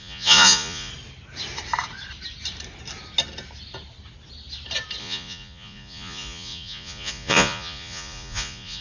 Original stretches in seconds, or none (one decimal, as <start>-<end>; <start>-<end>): 0.9-5.0